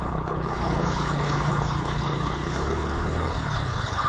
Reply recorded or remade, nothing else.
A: remade